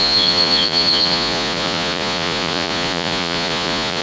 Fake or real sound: fake